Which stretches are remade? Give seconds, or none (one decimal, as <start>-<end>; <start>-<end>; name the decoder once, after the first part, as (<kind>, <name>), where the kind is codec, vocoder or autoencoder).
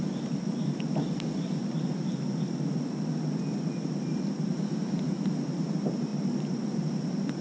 6.1-7.0 (vocoder, BigVGAN v2)